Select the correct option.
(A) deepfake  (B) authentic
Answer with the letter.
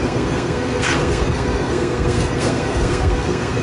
A